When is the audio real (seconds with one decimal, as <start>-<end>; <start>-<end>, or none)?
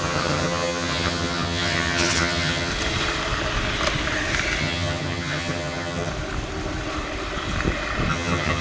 2.7-4.6; 6.1-8.1